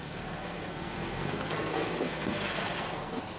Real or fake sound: fake